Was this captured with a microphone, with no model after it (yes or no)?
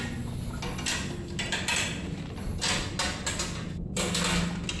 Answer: yes